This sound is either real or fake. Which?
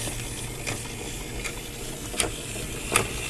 real